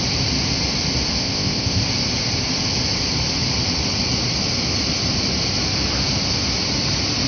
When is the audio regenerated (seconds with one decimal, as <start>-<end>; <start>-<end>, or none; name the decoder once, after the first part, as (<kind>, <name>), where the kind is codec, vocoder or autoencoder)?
1.2-1.8 (codec, ZipCodec)